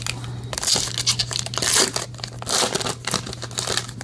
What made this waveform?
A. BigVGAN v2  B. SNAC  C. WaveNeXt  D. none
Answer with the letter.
D